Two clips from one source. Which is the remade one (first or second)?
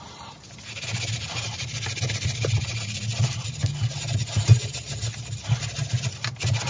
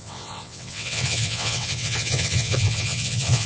second